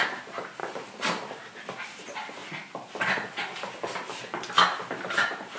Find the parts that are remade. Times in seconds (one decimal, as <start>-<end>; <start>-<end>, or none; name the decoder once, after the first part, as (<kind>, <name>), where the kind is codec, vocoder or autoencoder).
0.0-0.6 (vocoder, BigVGAN v2); 1.8-2.4; 4.2-5.6